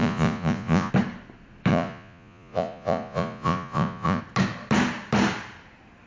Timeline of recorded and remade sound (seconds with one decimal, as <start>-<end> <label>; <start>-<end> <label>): 0.0-0.9 remade; 0.9-1.7 recorded; 1.7-4.2 remade; 4.2-6.1 recorded